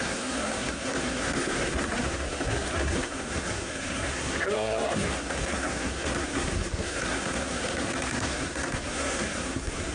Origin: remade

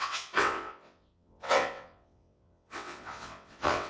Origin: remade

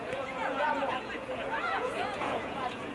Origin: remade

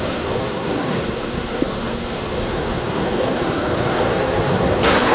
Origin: remade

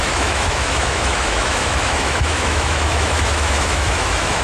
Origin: remade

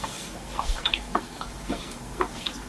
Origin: remade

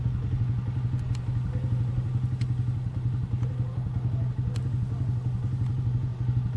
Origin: recorded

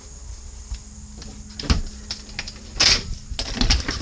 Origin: recorded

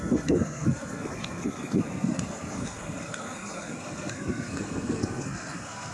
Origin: remade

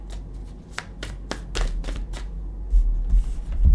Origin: recorded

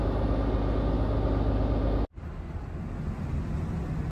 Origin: recorded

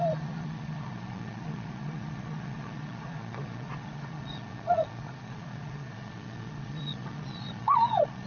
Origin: remade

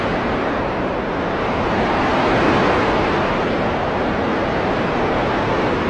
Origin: recorded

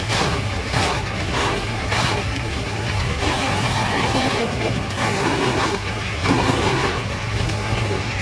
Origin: remade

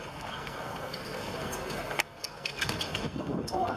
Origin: remade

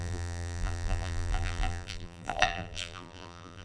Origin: remade